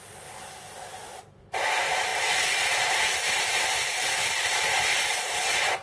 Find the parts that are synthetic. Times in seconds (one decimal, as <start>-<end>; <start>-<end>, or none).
none